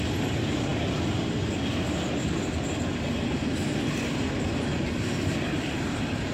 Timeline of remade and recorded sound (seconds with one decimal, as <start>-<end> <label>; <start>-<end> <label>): 0.0-6.3 recorded